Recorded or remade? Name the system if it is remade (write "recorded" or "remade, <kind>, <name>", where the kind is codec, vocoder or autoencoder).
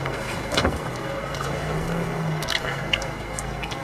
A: remade, codec, SNAC